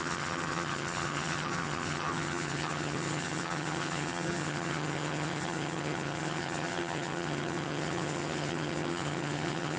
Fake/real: fake